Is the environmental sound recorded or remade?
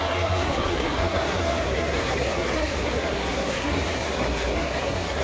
remade